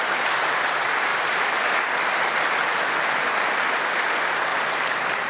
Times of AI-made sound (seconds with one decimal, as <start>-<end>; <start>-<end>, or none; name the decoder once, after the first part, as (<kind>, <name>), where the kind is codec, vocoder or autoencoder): 1.1-1.6 (vocoder, BigVGAN v2); 4.5-5.3